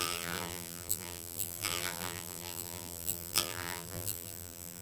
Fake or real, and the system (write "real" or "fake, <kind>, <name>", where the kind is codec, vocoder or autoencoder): fake, vocoder, BigVGAN v2